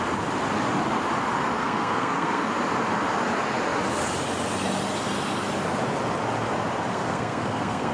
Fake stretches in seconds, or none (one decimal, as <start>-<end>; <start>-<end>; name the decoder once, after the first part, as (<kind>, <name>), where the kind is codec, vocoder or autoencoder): 1.6-2.4 (codec, SNAC); 6.9-7.9